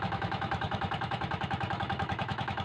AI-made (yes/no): yes